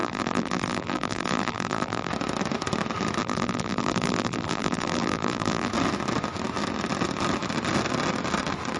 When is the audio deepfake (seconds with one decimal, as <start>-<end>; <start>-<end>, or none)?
0.0-2.1; 3.2-5.7